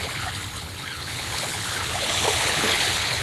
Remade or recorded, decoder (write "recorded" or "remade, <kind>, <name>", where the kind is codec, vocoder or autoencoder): remade, codec, HILCodec